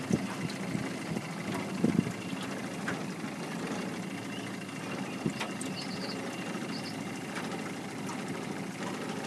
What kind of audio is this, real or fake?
real